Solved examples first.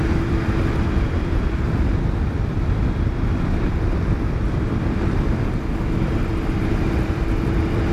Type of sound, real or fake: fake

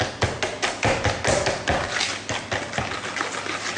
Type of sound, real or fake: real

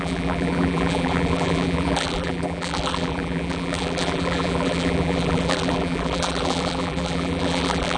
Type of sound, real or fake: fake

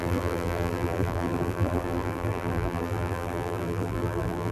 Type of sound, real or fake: fake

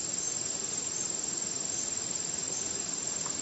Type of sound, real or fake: real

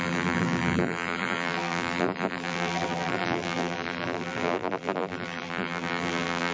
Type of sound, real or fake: fake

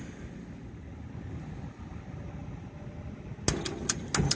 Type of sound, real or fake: real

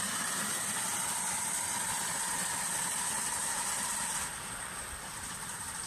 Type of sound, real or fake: real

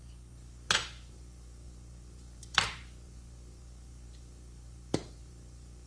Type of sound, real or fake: fake